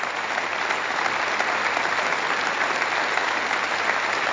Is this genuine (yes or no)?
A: yes